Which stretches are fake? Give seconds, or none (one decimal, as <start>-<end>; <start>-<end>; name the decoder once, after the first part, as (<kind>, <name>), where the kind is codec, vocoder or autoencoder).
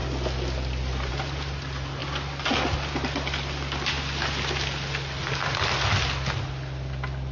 none